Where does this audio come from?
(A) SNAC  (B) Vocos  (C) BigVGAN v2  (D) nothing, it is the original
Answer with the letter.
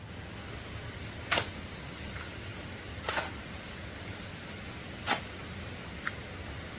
D